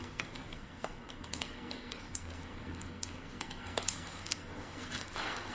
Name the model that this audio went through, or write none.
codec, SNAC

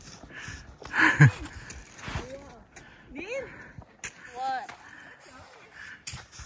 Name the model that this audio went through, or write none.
none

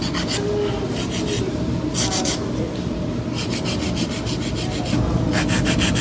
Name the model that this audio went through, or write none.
none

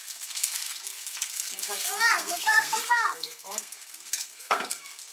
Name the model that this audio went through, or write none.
codec, SNAC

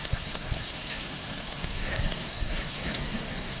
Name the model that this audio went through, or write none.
codec, SNAC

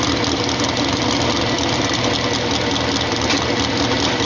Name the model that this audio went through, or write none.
none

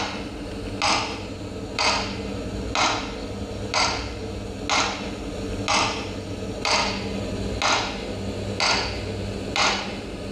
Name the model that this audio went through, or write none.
none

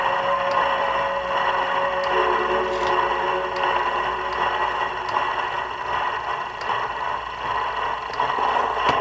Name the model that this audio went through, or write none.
none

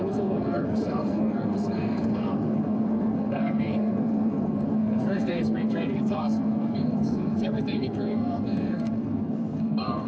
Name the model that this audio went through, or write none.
codec, SNAC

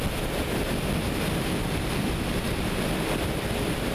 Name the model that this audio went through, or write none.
none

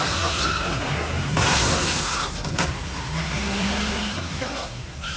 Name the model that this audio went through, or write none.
codec, SNAC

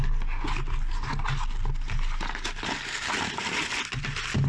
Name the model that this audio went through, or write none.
none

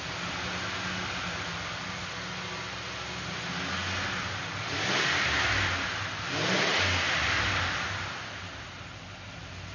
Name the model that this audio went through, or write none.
none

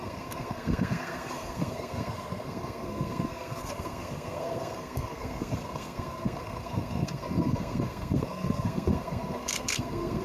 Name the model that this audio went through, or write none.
codec, SNAC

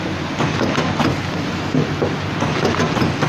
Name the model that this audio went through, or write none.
none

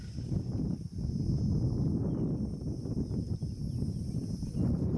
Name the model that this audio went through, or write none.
none